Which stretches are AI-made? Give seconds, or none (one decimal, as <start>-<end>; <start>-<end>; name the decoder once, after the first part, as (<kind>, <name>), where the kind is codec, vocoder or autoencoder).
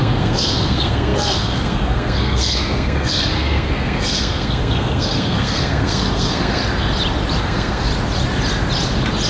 0.0-6.6 (codec, SNAC); 7.4-7.9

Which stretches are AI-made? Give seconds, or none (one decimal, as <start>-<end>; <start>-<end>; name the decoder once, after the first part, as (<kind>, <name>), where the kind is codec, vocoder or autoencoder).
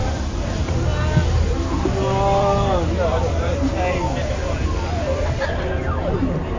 none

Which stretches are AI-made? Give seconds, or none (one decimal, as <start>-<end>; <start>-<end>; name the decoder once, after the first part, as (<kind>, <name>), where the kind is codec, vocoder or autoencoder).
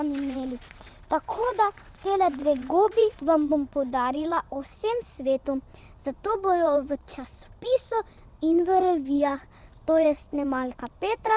0.0-11.4 (vocoder, WaveNeXt)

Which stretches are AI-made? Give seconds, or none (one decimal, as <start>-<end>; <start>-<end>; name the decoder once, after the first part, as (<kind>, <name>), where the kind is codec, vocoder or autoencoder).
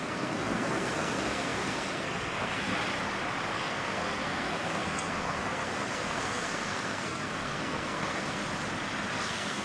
0.0-2.7 (codec, SNAC); 3.5-8.4; 9.2-9.6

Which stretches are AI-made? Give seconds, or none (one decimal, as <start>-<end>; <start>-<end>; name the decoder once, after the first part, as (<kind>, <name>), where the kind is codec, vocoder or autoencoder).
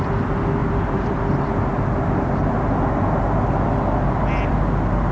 0.6-1.2 (vocoder, BigVGAN v2)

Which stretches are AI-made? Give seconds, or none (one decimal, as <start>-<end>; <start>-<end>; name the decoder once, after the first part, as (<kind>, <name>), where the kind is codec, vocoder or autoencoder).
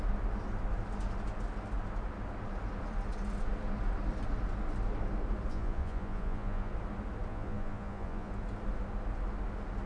5.5-6.7 (vocoder, Vocos); 7.3-8.3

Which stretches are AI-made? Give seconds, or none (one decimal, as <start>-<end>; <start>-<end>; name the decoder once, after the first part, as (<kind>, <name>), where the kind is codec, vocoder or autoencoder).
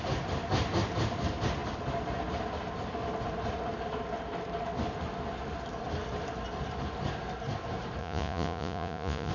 8.0-9.3 (vocoder, Vocos)